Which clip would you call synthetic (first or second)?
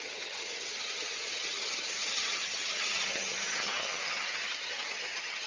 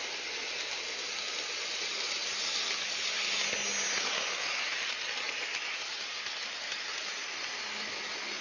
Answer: first